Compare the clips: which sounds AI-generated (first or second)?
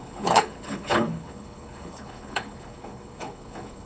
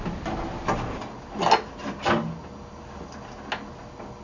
first